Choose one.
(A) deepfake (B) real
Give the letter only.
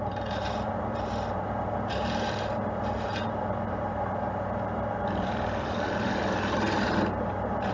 A